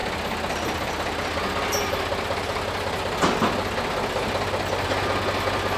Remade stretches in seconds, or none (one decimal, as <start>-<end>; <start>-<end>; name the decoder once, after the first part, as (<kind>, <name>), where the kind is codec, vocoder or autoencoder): none